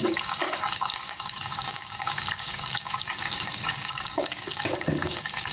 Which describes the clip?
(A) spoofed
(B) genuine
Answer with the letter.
A